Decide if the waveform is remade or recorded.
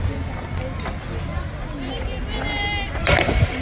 recorded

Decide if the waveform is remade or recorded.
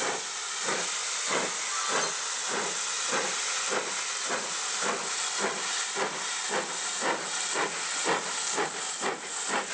recorded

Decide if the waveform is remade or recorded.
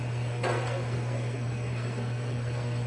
remade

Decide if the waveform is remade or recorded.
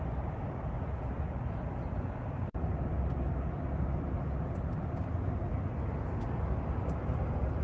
recorded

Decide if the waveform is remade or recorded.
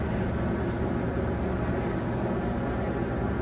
recorded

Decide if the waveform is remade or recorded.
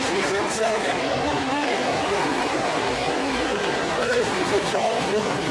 remade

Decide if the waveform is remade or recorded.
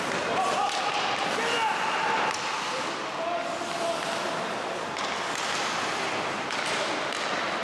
recorded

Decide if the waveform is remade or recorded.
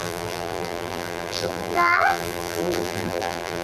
remade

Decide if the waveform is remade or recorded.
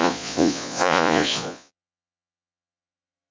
remade